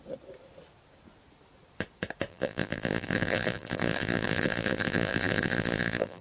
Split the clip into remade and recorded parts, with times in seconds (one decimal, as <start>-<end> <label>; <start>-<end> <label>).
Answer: 0.0-2.3 recorded; 2.3-6.2 remade